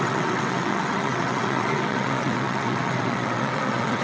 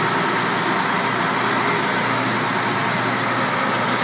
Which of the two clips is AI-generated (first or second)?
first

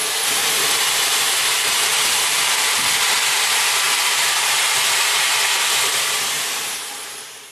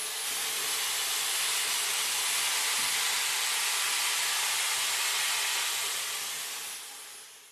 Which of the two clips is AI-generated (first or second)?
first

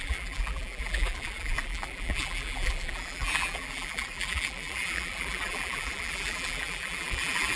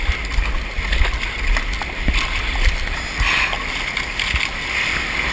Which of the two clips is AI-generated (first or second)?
first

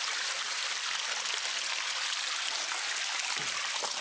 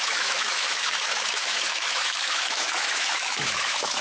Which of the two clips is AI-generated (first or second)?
second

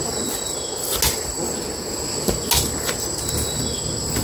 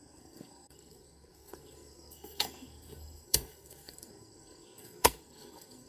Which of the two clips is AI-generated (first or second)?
second